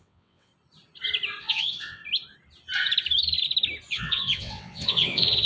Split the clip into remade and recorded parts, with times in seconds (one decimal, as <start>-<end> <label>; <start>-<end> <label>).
0.0-0.5 remade; 0.5-1.4 recorded; 1.4-2.0 remade; 2.0-3.9 recorded; 3.9-5.5 remade